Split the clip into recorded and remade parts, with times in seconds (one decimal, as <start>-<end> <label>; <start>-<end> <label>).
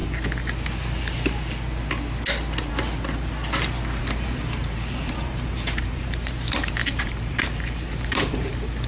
0.0-4.0 recorded; 4.0-8.5 remade; 8.5-8.9 recorded